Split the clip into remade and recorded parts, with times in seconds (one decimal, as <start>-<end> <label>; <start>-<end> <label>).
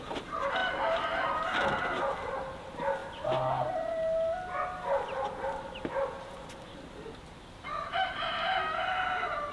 0.0-9.5 recorded